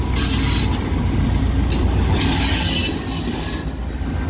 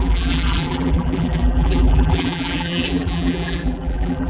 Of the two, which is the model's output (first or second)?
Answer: second